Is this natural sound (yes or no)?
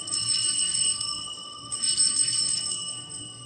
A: no